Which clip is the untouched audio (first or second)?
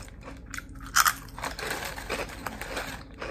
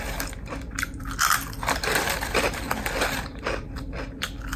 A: first